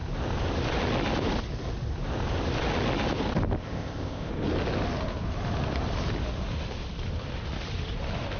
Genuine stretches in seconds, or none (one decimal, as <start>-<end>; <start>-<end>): 0.0-3.6; 4.3-8.4